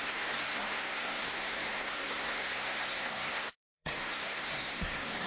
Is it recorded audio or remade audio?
remade